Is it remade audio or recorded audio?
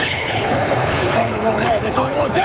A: remade